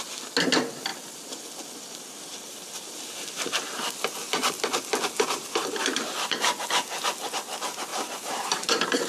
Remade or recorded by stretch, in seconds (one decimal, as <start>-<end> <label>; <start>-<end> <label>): 0.0-7.9 recorded; 7.9-9.1 remade